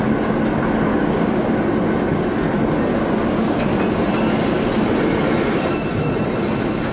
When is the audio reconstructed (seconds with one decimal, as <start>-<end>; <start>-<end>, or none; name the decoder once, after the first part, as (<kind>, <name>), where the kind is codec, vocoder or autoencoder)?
0.9-1.6 (codec, DAC); 2.9-3.6